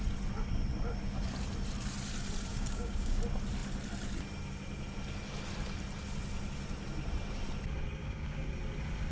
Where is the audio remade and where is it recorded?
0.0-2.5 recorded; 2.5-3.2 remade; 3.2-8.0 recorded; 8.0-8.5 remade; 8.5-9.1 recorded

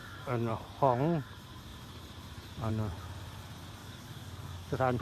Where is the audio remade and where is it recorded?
0.0-0.5 remade; 0.5-3.8 recorded; 3.8-5.0 remade

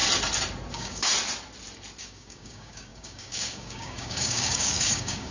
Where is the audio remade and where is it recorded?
0.0-0.7 recorded; 0.7-1.1 remade; 1.1-2.0 recorded; 2.0-5.3 remade